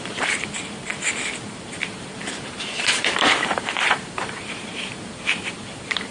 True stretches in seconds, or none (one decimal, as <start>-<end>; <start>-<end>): 0.9-1.5